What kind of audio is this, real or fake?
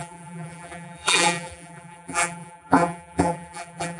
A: fake